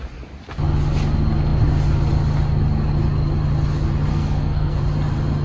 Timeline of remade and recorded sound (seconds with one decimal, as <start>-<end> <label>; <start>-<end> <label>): 0.0-4.1 recorded; 4.1-4.8 remade; 4.8-5.4 recorded